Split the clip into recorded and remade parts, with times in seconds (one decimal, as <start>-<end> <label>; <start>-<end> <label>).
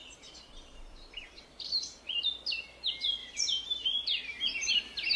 0.0-2.0 remade; 2.0-3.2 recorded; 3.2-4.7 remade; 4.7-5.2 recorded